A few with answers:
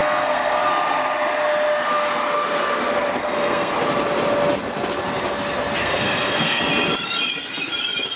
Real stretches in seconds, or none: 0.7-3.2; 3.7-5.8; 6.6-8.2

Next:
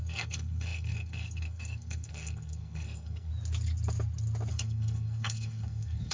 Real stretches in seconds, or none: 3.3-4.5

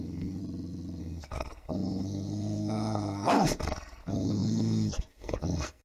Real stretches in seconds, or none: 0.4-1.0

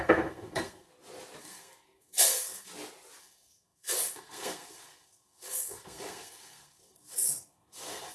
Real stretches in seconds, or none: 0.9-1.4; 2.7-3.2

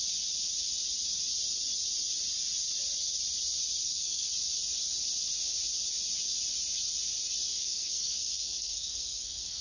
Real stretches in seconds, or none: 0.0-3.8; 4.3-7.5

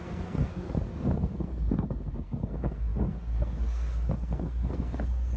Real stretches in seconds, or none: none

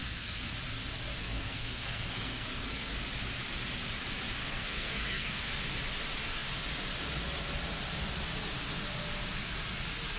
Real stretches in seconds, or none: 0.5-1.2; 2.9-4.4; 5.6-10.2

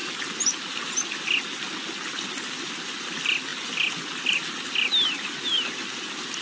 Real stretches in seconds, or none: 0.0-6.4